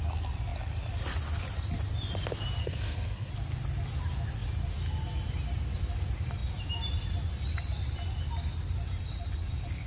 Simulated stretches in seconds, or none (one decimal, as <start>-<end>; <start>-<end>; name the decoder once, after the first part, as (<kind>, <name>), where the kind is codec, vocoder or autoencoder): 2.6-3.3 (codec, SNAC)